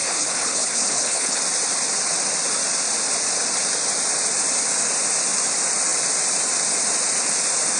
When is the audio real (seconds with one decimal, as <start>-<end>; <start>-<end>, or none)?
1.4-7.8

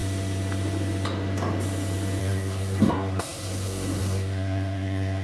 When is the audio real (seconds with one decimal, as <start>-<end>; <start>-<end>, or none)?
0.0-2.2

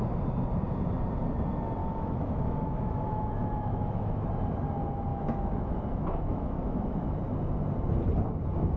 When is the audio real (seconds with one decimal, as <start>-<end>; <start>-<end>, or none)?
0.0-1.8; 4.3-5.1; 7.2-8.8

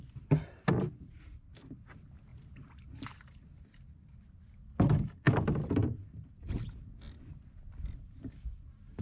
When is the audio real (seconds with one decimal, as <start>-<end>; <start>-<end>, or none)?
0.0-5.8; 6.6-9.0

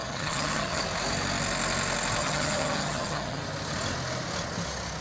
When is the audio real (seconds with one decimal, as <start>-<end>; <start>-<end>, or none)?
0.8-2.2; 3.4-5.0

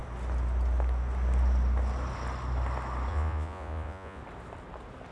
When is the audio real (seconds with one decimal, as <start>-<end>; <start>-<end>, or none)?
0.0-3.1; 4.2-5.1

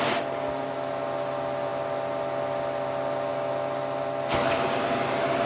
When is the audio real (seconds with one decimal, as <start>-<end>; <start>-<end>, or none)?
0.0-5.5